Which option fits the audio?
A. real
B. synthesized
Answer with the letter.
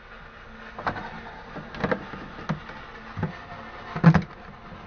A